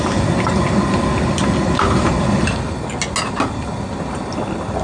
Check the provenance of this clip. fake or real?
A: real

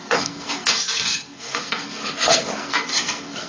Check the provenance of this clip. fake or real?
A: fake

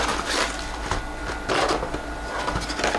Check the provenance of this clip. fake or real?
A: real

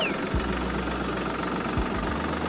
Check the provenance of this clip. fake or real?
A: real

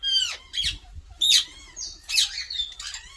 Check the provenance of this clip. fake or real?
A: real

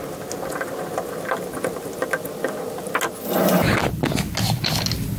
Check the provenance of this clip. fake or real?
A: real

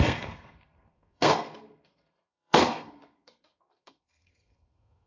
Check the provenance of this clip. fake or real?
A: fake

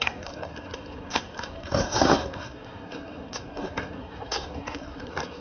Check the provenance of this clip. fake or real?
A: fake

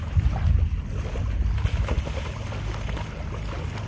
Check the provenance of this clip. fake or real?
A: real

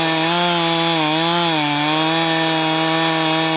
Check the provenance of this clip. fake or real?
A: real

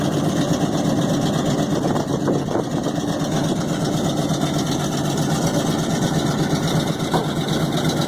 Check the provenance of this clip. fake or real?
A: real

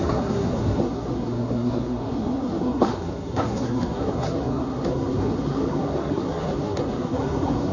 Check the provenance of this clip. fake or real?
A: fake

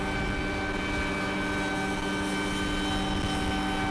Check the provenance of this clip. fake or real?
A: real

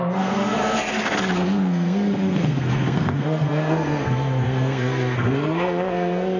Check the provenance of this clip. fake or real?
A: fake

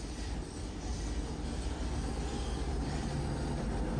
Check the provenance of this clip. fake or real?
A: real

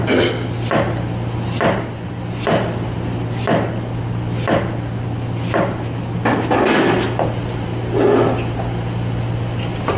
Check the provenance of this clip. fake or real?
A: real